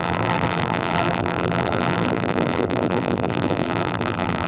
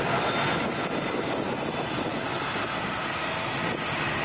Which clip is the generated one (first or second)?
first